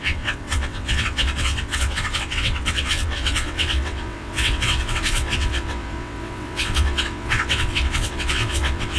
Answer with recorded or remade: remade